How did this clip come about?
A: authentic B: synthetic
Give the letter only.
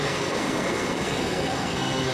B